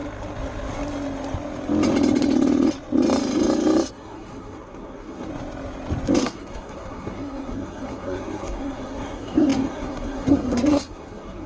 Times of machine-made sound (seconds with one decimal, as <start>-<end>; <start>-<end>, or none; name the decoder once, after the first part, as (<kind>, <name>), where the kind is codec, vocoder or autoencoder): 3.9-5.3 (codec, SNAC); 6.2-11.5